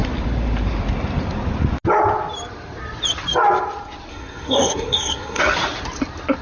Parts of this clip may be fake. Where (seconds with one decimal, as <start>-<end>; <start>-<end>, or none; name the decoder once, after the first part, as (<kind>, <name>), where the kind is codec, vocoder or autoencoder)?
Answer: 4.1-5.4 (codec, SNAC)